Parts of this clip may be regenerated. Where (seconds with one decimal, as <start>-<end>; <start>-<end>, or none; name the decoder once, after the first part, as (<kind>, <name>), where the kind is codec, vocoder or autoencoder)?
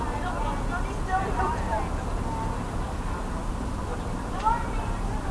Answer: none